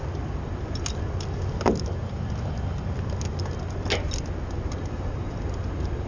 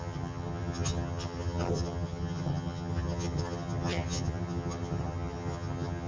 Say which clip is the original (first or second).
first